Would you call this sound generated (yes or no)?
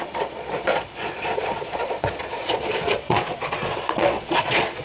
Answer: yes